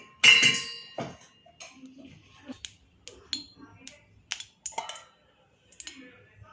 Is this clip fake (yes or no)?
no